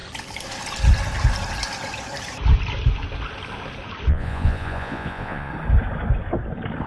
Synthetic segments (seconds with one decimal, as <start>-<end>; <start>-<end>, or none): 4.1-5.5

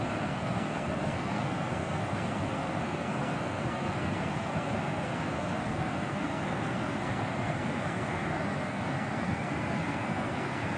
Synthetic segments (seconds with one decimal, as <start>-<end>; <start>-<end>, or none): 0.0-10.8

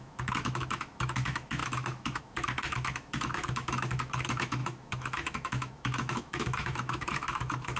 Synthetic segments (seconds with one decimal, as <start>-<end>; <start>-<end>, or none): 0.0-7.8

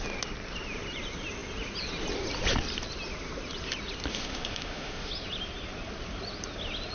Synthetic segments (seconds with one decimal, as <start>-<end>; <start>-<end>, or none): 4.1-5.1

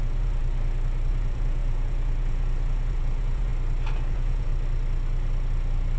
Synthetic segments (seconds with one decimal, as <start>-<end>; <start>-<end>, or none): 0.0-0.4; 1.1-3.5; 4.1-4.5